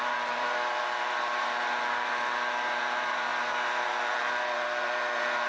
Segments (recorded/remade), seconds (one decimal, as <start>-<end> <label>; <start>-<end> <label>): 0.0-5.5 remade